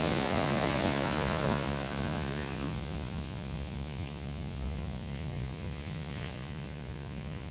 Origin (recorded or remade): remade